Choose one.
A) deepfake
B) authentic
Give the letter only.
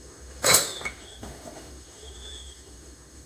A